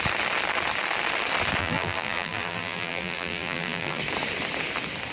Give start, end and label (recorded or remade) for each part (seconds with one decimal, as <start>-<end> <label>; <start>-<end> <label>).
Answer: 0.0-1.6 recorded; 1.6-4.0 remade; 4.0-5.1 recorded